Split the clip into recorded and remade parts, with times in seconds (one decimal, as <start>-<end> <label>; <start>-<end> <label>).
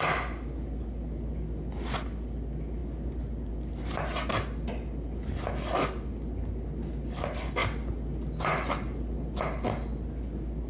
0.0-10.7 recorded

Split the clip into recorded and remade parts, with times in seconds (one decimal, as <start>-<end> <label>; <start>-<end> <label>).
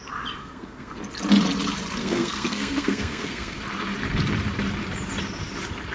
0.0-0.4 recorded; 0.4-1.0 remade; 1.0-2.0 recorded; 2.0-3.6 remade; 3.6-5.9 recorded